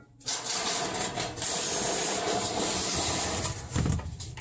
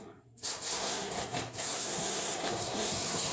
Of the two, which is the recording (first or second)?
first